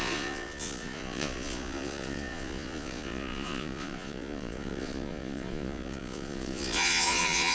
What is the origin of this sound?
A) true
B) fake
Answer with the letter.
B